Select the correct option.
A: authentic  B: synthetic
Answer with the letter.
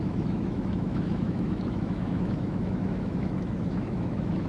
B